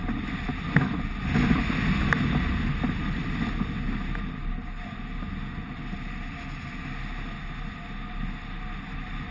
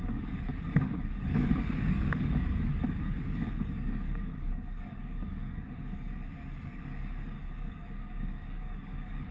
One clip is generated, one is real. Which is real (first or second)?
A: first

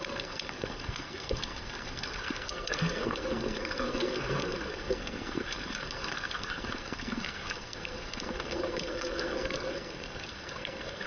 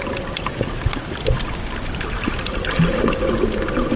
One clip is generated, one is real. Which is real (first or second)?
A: second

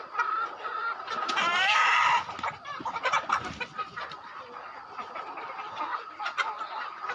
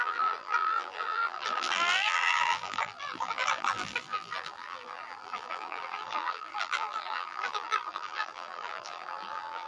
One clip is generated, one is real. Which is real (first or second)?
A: first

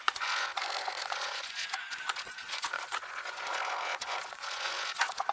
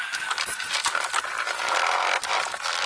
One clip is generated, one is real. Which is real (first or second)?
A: second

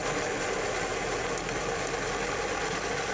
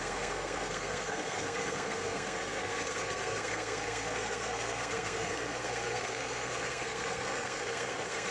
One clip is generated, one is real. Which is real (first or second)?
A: first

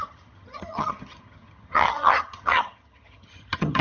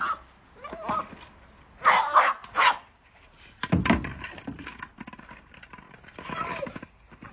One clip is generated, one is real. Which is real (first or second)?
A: second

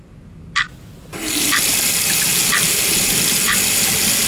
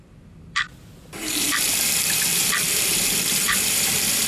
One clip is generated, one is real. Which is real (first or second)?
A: first